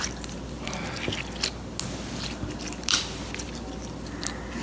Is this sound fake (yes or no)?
no